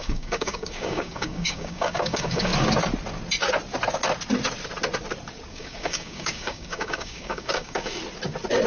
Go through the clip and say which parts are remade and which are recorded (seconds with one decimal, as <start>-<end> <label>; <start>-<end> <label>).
0.0-2.5 remade; 2.5-5.5 recorded; 5.5-8.0 remade; 8.0-8.7 recorded